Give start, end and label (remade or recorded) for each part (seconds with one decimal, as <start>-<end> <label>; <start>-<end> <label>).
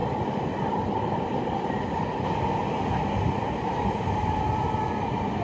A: 0.0-5.4 recorded